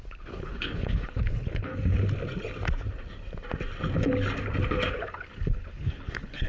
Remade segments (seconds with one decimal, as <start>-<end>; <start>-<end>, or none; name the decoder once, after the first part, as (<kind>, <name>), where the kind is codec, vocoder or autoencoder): 0.0-1.7 (codec, HILCodec); 4.9-6.5